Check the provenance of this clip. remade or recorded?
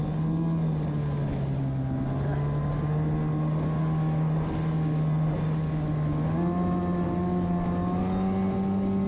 recorded